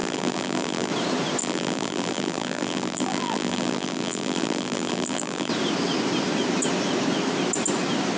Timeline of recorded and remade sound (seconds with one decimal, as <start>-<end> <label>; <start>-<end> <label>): 0.0-0.9 remade; 0.9-1.4 recorded; 1.4-5.5 remade; 5.5-8.2 recorded